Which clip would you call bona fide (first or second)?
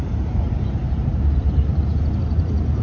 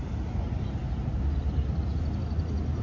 second